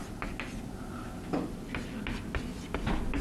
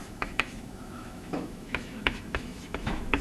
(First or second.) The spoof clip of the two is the second